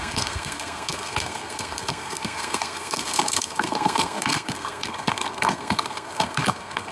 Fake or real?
fake